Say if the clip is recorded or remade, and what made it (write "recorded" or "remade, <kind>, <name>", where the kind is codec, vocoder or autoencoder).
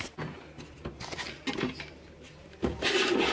recorded